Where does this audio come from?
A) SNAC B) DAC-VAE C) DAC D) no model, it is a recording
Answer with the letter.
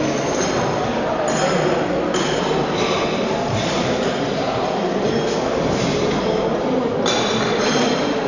D